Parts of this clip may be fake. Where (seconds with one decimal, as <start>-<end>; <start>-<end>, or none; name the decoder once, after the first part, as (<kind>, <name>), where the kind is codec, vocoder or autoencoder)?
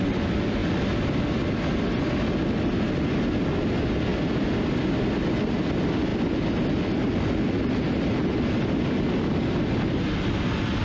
none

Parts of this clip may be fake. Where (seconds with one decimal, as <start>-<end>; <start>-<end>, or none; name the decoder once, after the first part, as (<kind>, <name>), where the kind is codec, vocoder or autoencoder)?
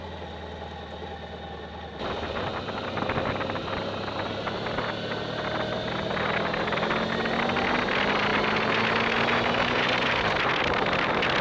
none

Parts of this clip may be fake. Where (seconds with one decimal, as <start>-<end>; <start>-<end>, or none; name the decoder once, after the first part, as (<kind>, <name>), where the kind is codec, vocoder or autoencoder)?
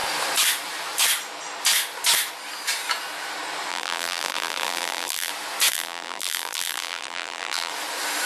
3.7-5.3 (vocoder, BigVGAN v2); 5.7-7.7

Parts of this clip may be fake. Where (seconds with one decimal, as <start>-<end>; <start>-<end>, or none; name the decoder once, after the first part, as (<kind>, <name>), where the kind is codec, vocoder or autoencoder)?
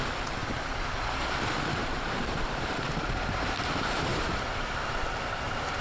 1.8-2.7 (vocoder, BigVGAN v2); 4.1-5.8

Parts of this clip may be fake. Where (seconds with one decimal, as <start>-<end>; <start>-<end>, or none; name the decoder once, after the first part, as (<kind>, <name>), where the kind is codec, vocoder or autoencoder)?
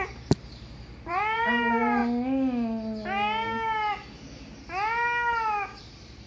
0.0-2.0 (vocoder, BigVGAN v2); 5.8-6.3